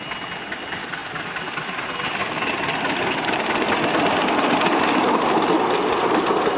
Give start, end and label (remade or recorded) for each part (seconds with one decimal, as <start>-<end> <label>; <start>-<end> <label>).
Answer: 0.0-6.6 recorded